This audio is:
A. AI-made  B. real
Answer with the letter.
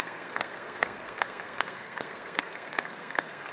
A